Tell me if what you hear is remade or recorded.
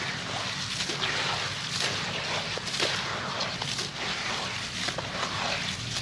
recorded